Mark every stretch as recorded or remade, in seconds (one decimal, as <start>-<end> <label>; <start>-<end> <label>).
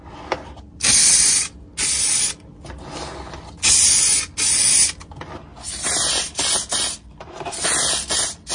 0.0-8.5 recorded